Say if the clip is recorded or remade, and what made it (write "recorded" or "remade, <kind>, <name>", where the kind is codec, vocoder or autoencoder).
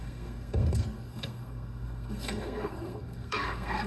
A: remade, codec, SNAC